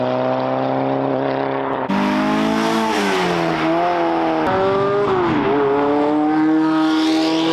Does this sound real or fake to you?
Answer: real